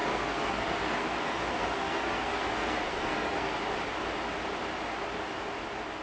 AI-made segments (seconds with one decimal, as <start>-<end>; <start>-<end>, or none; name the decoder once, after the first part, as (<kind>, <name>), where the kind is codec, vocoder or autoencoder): 0.0-3.6 (codec, SNAC)